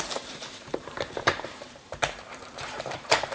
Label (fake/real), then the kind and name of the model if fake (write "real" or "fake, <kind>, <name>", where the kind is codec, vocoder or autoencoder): fake, vocoder, BigVGAN v2